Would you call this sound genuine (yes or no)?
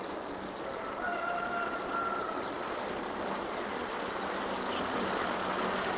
yes